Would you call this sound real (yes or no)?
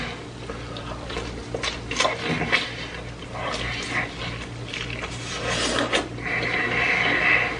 yes